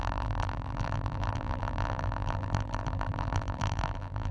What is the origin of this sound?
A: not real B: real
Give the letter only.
A